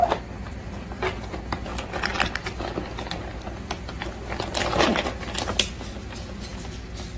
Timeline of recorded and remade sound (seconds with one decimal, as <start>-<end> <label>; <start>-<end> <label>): 0.0-7.2 recorded